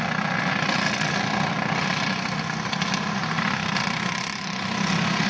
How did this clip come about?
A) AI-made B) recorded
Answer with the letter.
B